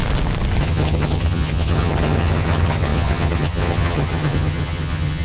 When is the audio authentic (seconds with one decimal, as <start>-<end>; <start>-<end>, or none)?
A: 0.0-0.6